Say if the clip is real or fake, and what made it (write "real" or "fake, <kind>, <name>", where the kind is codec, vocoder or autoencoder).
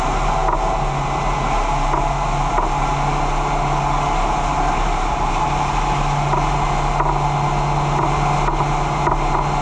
real